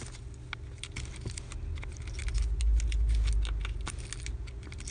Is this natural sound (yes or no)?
yes